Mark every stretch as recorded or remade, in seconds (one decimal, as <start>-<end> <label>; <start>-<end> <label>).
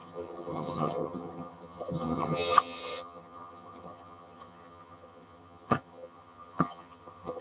0.0-7.4 remade